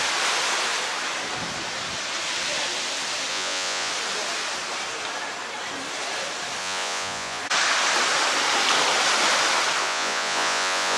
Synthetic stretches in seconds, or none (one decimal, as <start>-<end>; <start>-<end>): 3.3-3.9; 6.6-7.4; 9.8-11.0